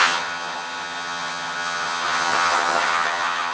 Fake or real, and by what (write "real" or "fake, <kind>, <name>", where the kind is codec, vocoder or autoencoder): fake, vocoder, HiFi-GAN